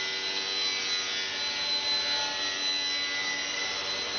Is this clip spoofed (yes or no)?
no